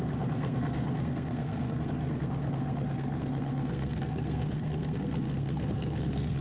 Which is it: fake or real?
fake